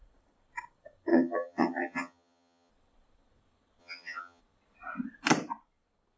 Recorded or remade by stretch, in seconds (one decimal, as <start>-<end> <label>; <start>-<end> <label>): 0.0-1.1 recorded; 1.1-2.7 remade; 2.7-3.8 recorded; 3.8-4.4 remade; 4.4-6.2 recorded